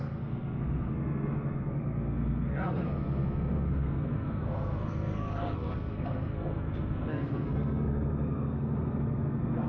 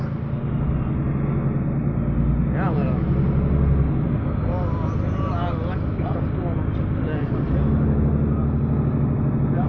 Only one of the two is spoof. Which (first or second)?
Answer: first